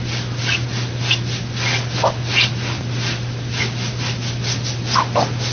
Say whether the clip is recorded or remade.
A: recorded